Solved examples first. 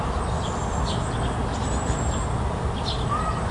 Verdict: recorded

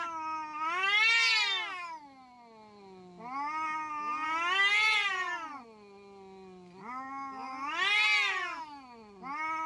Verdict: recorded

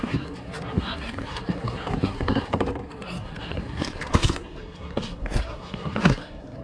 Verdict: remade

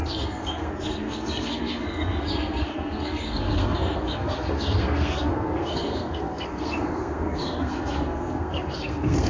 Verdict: remade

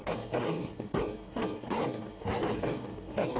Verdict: remade